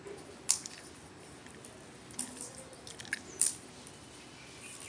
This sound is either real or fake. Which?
real